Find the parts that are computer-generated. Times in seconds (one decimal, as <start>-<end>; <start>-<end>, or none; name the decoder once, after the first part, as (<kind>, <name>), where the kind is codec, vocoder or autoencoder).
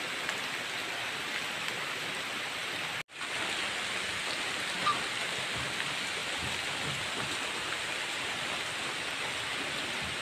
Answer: none